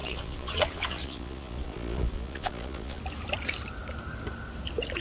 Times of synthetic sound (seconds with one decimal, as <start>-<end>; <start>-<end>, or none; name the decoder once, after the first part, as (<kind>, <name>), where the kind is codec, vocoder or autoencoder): 0.0-3.0 (vocoder, Vocos)